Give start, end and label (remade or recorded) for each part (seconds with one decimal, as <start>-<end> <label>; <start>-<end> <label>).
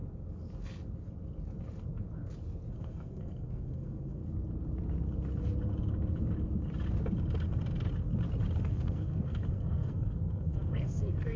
0.0-2.7 recorded; 2.7-4.2 remade; 4.2-8.6 recorded; 8.6-11.4 remade